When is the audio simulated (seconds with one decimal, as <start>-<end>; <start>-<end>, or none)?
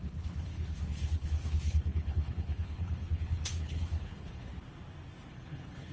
0.0-4.5; 5.3-5.9